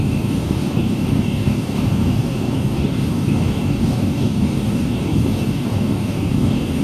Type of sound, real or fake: fake